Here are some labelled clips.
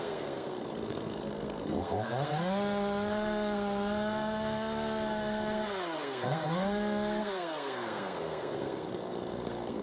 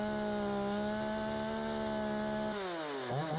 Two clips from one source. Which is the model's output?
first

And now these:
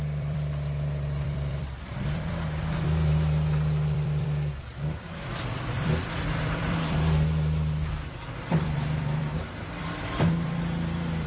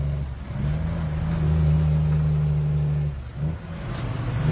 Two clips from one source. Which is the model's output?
first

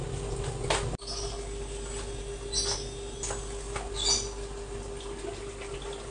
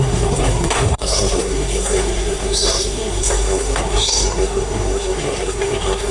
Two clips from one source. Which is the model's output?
second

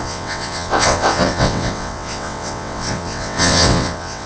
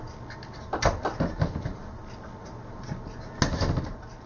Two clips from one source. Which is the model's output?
first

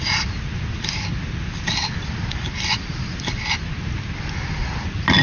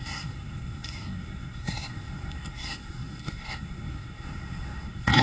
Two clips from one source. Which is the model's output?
second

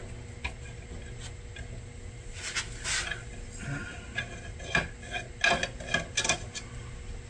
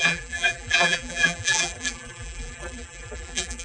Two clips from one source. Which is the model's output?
second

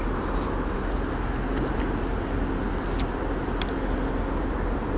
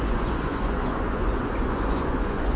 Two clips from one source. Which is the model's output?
second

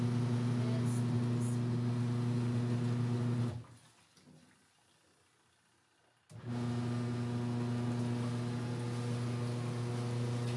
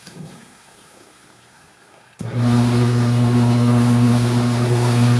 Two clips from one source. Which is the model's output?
second